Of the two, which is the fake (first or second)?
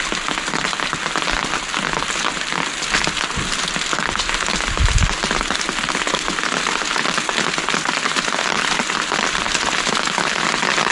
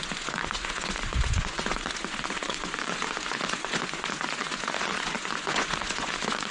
second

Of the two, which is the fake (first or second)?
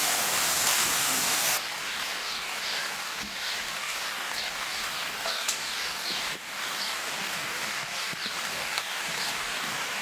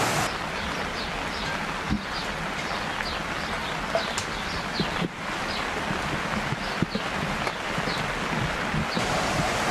first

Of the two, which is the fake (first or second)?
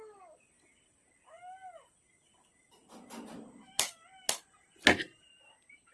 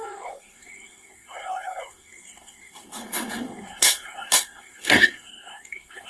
second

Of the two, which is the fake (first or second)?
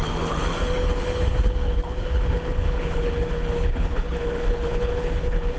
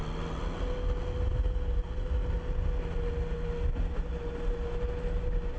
first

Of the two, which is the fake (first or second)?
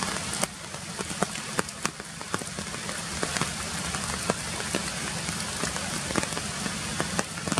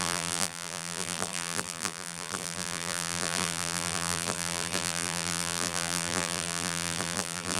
second